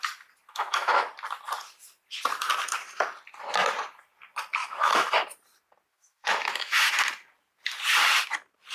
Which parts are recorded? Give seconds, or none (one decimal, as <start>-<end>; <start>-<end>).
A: 0.0-0.5; 1.1-4.6; 5.1-5.9; 6.9-8.7